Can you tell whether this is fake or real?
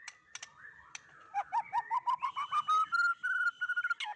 real